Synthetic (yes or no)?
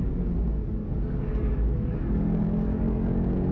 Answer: yes